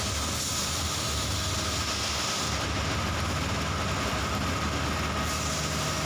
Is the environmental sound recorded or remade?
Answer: recorded